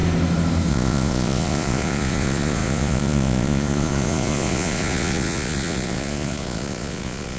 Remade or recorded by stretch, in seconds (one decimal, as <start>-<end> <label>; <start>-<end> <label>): 0.0-0.7 recorded; 0.7-7.4 remade